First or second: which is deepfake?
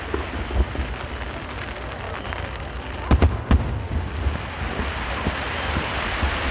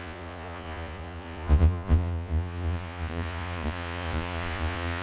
second